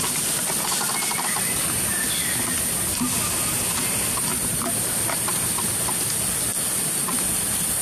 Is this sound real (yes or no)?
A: yes